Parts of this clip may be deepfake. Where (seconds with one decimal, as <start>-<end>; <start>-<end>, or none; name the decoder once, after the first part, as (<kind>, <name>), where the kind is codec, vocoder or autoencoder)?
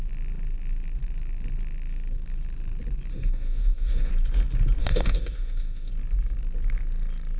3.1-4.1 (autoencoder, DAC-VAE); 4.8-5.9